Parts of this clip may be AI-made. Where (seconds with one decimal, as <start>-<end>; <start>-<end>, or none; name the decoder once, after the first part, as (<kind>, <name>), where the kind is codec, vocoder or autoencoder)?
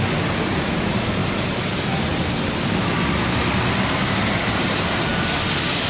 0.0-2.1 (vocoder, BigVGAN v2); 4.5-5.1